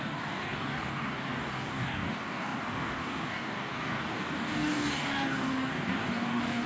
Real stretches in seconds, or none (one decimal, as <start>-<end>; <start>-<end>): none